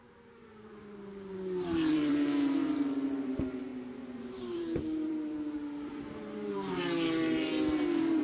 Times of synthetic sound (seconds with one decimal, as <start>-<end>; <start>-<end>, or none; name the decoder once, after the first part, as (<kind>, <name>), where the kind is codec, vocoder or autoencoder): 0.0-8.2 (vocoder, BigVGAN v2)

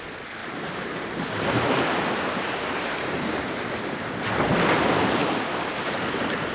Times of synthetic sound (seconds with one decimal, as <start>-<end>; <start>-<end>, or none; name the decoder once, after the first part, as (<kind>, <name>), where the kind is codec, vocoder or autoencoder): 0.4-4.3 (vocoder, BigVGAN v2); 5.2-6.5